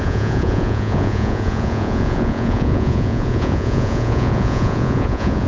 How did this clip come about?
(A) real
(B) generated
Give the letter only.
B